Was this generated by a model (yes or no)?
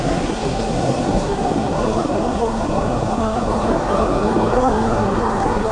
yes